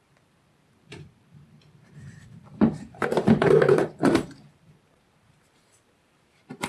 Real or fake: fake